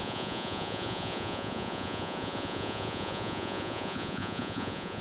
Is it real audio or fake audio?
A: fake